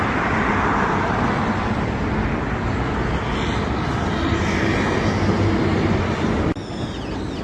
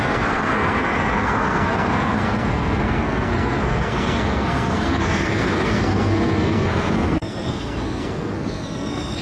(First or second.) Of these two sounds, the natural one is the first